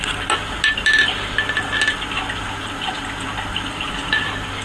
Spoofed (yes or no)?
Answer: no